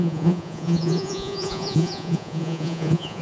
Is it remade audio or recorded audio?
remade